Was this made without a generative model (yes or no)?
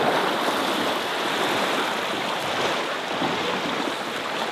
yes